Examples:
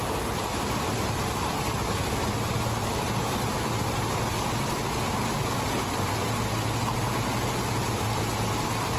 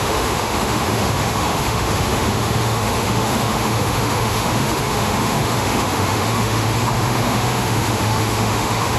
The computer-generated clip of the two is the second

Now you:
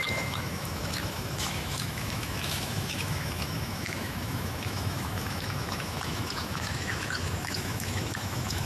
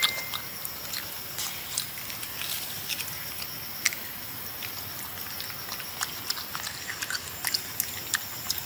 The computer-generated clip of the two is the first